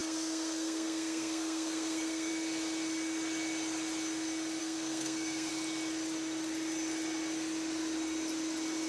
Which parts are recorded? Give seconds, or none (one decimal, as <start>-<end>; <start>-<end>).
2.3-4.6; 5.5-8.9